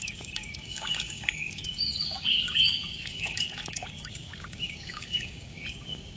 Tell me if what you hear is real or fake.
fake